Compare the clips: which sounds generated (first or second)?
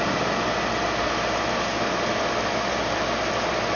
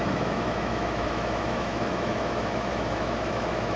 second